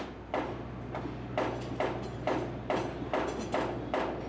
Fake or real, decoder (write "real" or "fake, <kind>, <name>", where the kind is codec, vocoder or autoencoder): real